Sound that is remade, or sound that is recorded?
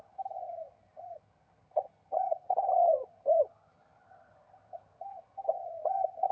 remade